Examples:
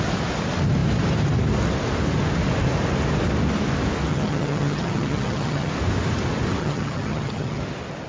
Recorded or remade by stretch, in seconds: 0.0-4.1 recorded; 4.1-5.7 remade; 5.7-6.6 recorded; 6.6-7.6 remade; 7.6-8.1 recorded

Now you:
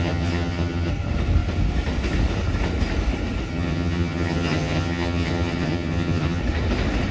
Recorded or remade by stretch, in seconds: 0.0-0.9 remade; 0.9-3.5 recorded; 3.5-6.4 remade; 6.4-7.1 recorded

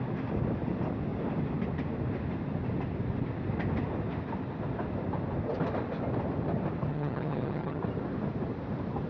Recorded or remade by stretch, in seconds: 0.0-6.9 recorded; 6.9-7.8 remade; 7.8-9.1 recorded

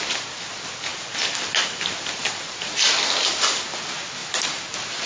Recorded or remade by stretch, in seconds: 0.0-5.1 recorded